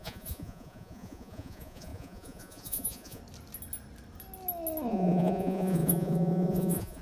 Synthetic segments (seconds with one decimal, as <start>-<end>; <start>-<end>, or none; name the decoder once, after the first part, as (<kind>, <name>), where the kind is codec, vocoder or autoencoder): 0.0-3.2 (vocoder, Vocos); 4.9-7.0